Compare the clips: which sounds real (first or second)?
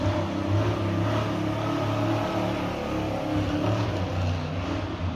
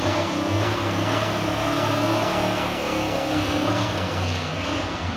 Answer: first